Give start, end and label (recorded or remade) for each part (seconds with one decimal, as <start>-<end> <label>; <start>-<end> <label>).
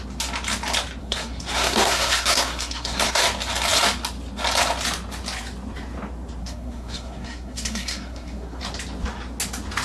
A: 0.0-1.0 recorded; 1.0-3.2 remade; 3.2-6.4 recorded; 6.4-8.6 remade; 8.6-9.8 recorded